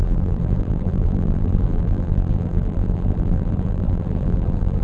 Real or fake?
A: fake